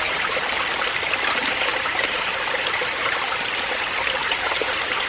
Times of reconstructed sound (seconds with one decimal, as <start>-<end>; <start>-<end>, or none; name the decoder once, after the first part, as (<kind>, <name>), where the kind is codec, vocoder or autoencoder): 1.7-3.4 (vocoder, BigVGAN v2); 4.2-5.1